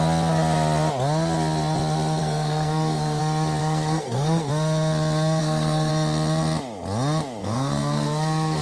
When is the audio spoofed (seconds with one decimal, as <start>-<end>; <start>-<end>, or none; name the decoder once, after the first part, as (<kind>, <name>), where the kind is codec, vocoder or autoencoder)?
2.2-3.2 (codec, SNAC); 3.6-4.5; 5.4-5.9; 7.4-8.6